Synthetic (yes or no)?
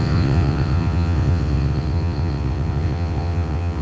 yes